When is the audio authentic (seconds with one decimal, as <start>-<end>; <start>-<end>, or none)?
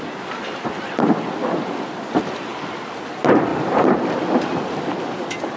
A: 0.0-5.6